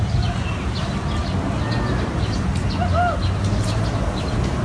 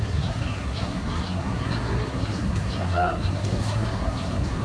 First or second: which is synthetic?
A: second